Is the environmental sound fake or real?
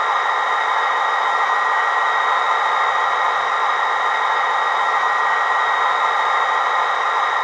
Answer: real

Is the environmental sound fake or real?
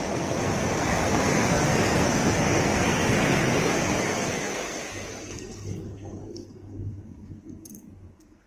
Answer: fake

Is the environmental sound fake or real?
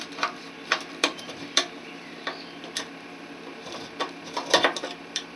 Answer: fake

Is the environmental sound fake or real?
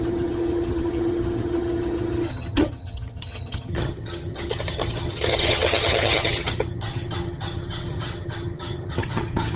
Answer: fake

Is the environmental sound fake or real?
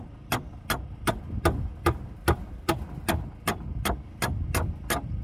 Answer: real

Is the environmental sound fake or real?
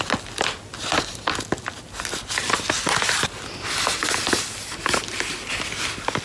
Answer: real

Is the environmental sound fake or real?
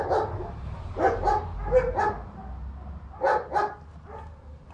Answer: real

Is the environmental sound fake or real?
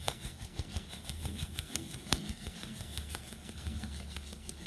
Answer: fake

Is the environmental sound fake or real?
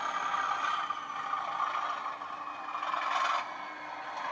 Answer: real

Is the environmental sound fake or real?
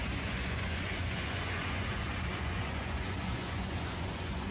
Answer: fake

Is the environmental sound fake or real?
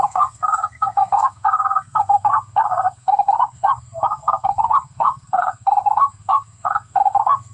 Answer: fake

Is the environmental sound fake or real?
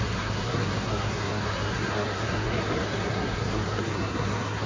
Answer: fake